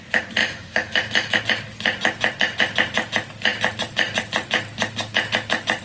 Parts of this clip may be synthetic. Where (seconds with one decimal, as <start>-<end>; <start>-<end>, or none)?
0.4-1.4

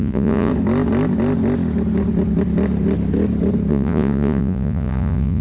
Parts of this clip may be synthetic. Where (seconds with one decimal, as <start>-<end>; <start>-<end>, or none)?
0.0-0.5; 3.7-5.4

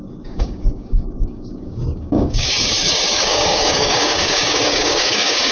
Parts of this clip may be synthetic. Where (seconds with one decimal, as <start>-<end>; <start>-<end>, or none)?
0.0-5.5

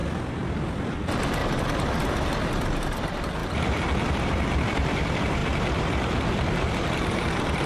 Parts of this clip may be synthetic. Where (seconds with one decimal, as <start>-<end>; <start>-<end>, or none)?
0.0-1.4; 2.6-5.4; 7.1-7.7

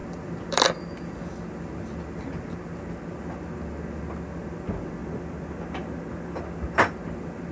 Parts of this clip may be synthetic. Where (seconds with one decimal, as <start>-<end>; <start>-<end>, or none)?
0.0-5.0; 6.4-7.5

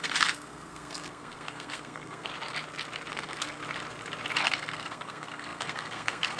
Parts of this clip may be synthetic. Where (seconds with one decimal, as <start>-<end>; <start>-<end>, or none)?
0.0-2.3; 3.1-3.6; 4.4-6.4

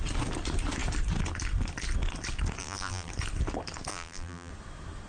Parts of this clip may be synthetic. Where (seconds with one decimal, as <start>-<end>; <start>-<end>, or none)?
2.6-3.1; 3.9-4.5